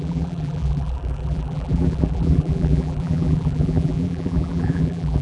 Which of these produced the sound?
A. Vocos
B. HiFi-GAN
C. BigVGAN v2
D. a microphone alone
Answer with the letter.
C